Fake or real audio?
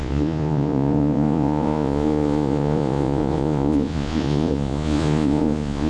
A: fake